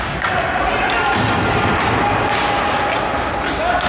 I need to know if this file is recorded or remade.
recorded